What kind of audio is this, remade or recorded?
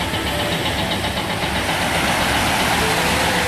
recorded